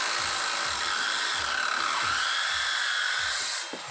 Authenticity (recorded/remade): recorded